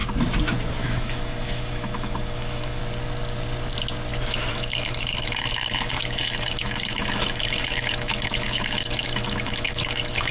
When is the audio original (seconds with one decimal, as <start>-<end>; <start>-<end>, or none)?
0.0-0.8; 2.8-4.5